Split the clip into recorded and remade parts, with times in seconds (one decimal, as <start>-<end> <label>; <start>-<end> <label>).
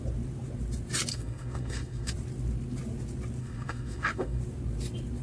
0.0-1.1 recorded; 1.1-2.1 remade; 2.1-3.4 recorded; 3.4-4.4 remade; 4.4-5.2 recorded